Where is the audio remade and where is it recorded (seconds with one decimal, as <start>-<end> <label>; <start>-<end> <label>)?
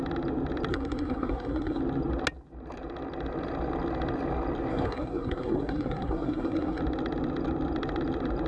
0.0-0.7 recorded; 0.7-1.8 remade; 1.8-4.7 recorded; 4.7-6.8 remade; 6.8-8.5 recorded